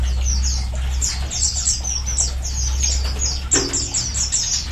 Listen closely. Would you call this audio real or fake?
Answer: real